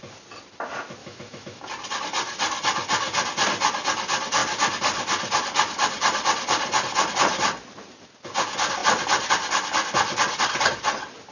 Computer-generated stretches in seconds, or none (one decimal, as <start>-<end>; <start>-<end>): 1.0-1.6